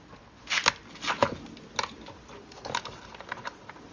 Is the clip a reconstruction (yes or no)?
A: no